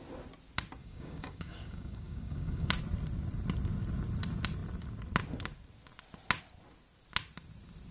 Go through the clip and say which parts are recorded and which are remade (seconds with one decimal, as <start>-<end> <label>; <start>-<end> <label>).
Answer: 0.0-0.8 recorded; 0.8-2.7 remade; 2.7-7.9 recorded